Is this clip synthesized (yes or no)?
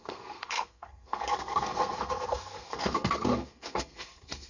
yes